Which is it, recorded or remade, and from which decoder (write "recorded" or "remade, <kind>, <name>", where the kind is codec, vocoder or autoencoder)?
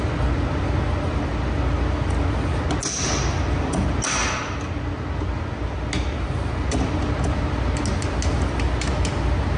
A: recorded